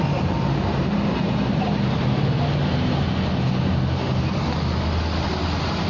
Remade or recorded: recorded